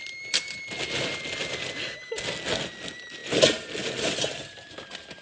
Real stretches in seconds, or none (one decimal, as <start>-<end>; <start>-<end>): 0.0-5.2